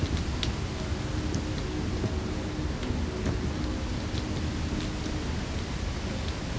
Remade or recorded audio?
recorded